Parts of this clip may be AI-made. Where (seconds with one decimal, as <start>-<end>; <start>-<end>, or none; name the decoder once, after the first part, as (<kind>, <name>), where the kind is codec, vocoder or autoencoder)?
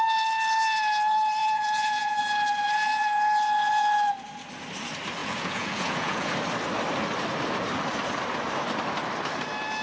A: 1.4-2.2 (vocoder, Vocos); 5.2-6.3